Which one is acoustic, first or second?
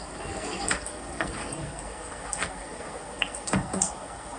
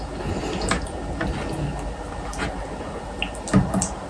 second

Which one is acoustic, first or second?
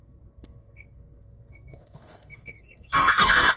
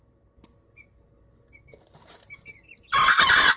second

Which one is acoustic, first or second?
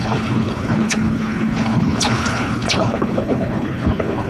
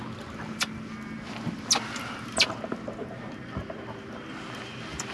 second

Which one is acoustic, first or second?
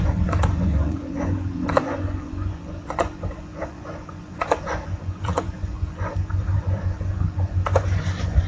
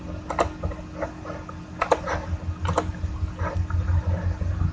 second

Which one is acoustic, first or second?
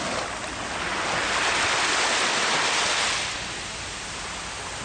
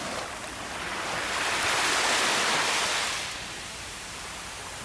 first